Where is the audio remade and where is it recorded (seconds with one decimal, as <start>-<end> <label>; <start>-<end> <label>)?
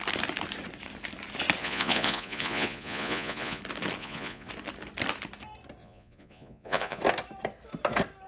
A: 0.0-1.6 recorded; 1.6-3.6 remade; 3.6-4.0 recorded; 4.0-4.5 remade; 4.5-5.8 recorded; 5.8-7.0 remade; 7.0-8.3 recorded